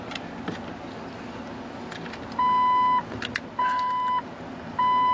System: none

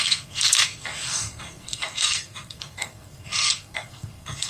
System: codec, SNAC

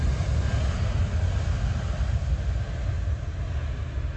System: none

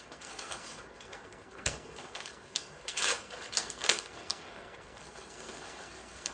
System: codec, SNAC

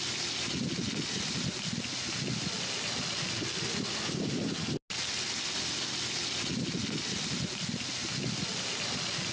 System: none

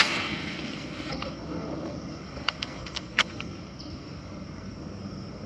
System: codec, SNAC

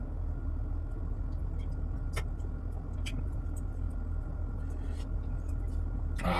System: none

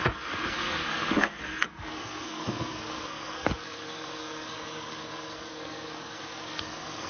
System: codec, SNAC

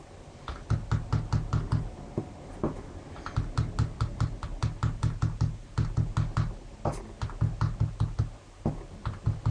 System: none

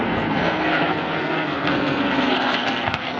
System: codec, SNAC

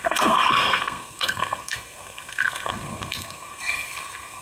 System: codec, SNAC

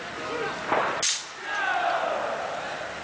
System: none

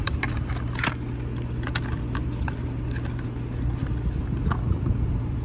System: none